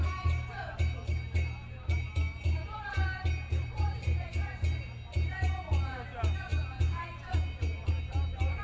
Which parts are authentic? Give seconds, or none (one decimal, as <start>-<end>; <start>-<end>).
0.0-8.6

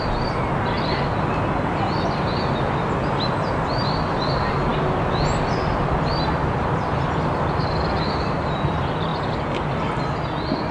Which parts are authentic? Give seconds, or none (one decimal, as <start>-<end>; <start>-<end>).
0.0-10.7